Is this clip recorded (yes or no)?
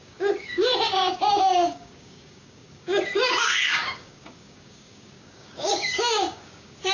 no